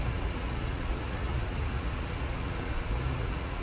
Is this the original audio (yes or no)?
no